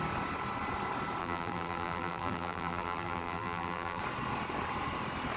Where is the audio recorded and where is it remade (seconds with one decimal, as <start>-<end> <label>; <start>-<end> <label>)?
0.0-1.2 recorded; 1.2-4.0 remade; 4.0-5.4 recorded